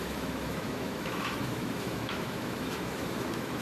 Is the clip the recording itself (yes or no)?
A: no